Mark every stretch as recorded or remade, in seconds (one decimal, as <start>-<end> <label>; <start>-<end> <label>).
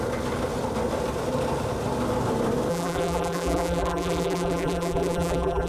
0.0-2.7 recorded; 2.7-5.7 remade